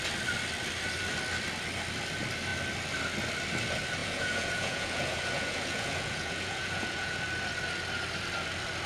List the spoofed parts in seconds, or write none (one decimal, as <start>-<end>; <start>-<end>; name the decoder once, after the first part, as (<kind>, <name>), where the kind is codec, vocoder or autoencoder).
4.0-7.2 (vocoder, Vocos)